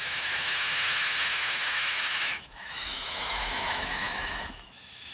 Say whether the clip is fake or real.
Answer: fake